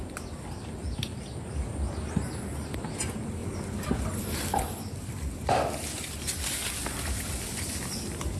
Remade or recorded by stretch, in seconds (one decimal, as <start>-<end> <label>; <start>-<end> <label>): 0.0-8.4 recorded